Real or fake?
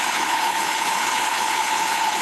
fake